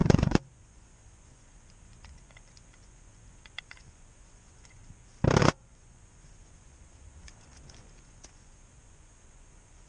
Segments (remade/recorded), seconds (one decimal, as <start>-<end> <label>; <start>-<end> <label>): 0.0-4.8 remade; 4.8-5.4 recorded; 5.4-9.9 remade